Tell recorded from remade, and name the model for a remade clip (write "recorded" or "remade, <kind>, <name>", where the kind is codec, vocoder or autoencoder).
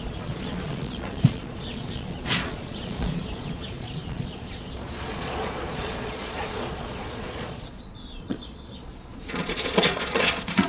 remade, vocoder, Vocos